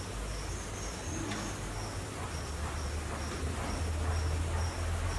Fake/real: real